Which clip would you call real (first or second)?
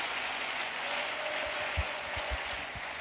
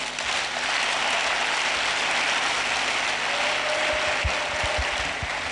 second